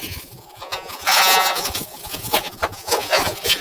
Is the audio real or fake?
fake